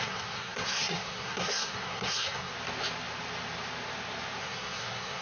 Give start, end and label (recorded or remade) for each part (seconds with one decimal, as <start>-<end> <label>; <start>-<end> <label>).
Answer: 0.0-2.5 remade; 2.5-4.4 recorded; 4.4-5.2 remade